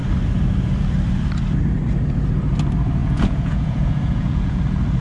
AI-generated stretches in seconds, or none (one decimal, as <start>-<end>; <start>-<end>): 3.0-4.6